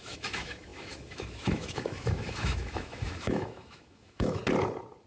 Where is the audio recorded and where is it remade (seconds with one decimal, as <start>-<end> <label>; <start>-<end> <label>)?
0.0-4.4 remade; 4.4-5.1 recorded